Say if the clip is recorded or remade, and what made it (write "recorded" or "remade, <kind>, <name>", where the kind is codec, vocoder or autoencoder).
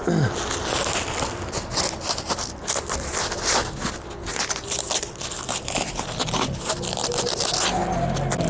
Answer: recorded